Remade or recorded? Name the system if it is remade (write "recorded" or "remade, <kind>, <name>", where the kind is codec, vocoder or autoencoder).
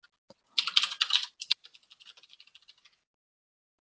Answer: recorded